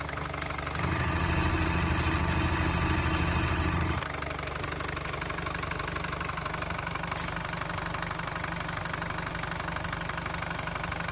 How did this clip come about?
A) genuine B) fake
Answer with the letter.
A